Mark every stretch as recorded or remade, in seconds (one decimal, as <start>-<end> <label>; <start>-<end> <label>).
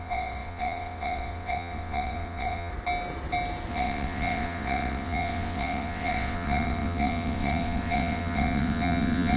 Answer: 0.0-2.7 remade; 2.7-3.7 recorded; 3.7-9.4 remade